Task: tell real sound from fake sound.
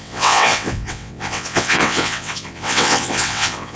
fake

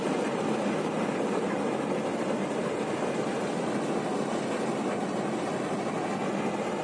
real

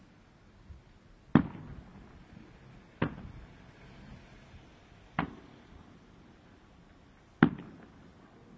real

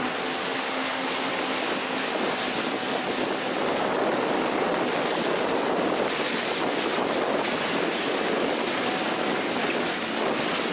real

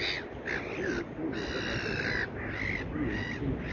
real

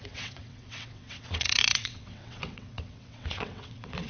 fake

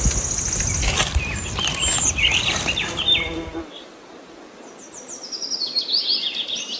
real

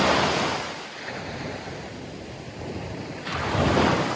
real